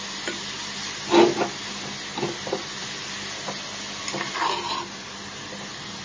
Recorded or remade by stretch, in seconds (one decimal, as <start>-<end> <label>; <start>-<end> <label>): 0.0-6.0 recorded